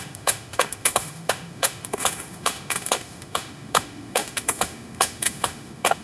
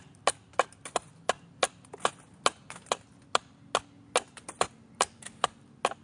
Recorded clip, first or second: second